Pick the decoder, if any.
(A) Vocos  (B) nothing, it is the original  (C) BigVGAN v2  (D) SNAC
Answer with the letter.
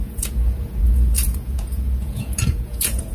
A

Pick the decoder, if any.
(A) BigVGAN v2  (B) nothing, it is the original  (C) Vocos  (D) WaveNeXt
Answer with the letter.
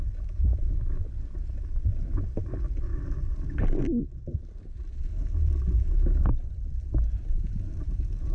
B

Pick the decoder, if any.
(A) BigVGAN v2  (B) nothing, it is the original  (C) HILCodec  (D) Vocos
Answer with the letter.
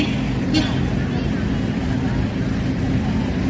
B